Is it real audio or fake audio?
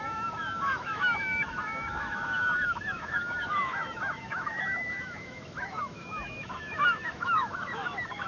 fake